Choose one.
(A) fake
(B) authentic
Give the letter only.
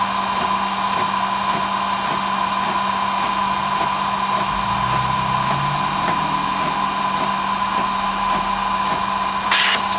B